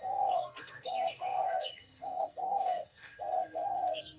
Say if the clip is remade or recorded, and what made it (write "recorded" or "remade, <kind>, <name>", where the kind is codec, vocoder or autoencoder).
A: remade, codec, SNAC